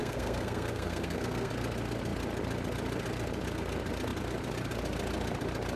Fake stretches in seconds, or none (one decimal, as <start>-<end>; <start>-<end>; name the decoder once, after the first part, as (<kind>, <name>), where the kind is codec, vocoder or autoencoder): 0.0-1.5 (codec, SNAC)